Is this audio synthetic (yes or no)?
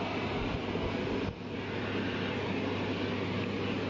no